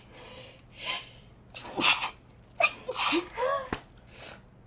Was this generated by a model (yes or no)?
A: no